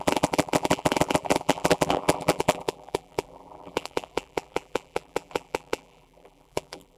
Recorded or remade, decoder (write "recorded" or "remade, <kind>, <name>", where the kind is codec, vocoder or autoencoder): remade, vocoder, BigVGAN v2